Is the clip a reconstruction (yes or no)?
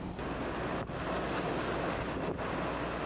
no